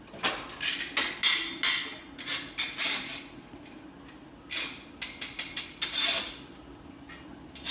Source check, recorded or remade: recorded